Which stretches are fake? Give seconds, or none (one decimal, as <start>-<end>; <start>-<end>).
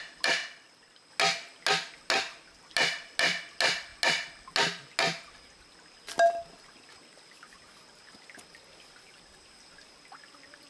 none